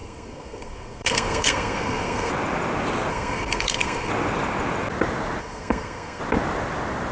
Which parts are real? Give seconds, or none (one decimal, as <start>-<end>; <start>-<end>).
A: 2.3-3.1; 4.1-5.4; 6.2-7.1